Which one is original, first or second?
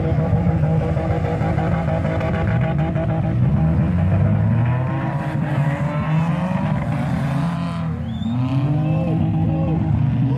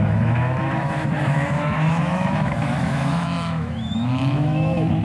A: first